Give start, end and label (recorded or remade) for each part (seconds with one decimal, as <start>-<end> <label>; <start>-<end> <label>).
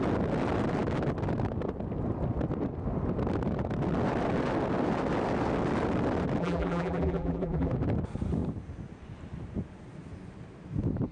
0.0-6.4 recorded; 6.4-7.7 remade; 7.7-11.1 recorded